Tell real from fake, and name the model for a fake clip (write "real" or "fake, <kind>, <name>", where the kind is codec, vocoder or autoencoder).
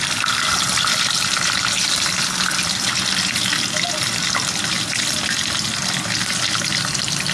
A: real